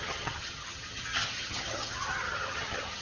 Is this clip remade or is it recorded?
remade